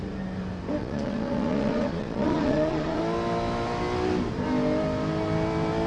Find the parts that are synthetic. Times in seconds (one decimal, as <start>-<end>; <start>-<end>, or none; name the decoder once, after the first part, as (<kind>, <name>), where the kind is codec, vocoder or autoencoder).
0.8-3.0 (vocoder, Vocos)